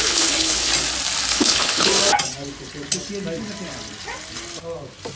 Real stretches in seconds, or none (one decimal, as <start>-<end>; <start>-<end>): 0.7-1.3; 1.9-5.2